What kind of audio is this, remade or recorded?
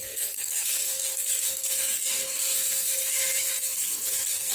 remade